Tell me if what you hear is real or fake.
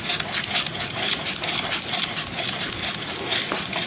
real